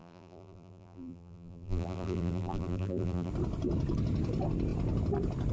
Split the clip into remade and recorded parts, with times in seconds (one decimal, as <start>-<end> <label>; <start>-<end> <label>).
0.0-3.3 remade; 3.3-5.5 recorded